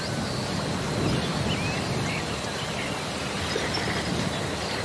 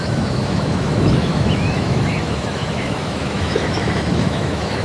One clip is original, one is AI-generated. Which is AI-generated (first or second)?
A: second